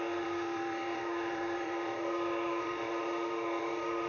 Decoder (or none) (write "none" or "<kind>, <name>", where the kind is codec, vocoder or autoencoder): autoencoder, DAC-VAE